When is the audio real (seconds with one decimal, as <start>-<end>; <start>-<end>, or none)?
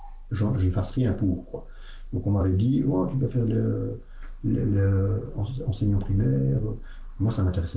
0.0-7.8